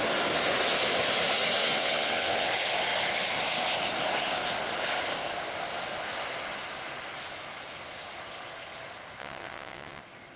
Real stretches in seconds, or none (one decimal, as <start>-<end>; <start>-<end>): 0.0-1.6; 2.5-9.2; 10.0-10.4